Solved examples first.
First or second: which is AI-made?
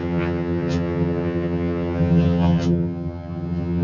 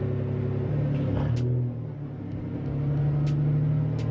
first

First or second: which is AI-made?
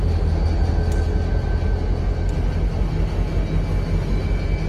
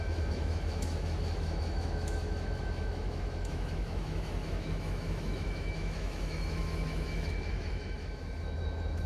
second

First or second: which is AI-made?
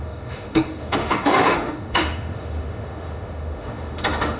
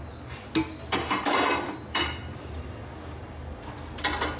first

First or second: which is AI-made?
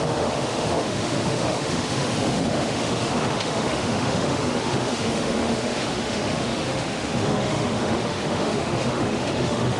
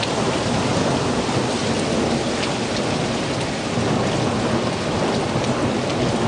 first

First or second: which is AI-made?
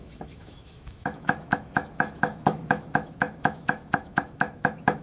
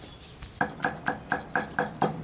first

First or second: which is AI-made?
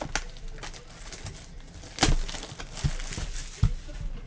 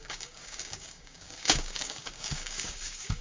second